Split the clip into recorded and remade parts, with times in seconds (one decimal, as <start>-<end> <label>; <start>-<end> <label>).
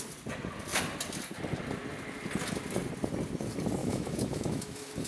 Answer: 0.0-3.8 recorded; 3.8-5.1 remade